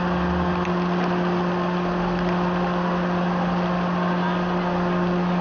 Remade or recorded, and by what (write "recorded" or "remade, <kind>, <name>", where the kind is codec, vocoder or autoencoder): recorded